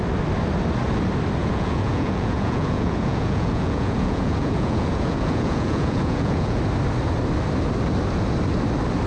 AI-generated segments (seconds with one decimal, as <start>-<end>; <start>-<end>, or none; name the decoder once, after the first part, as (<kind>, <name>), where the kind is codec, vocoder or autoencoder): 1.4-6.6 (vocoder, Vocos)